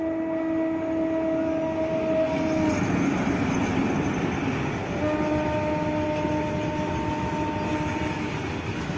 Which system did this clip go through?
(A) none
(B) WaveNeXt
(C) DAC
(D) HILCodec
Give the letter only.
A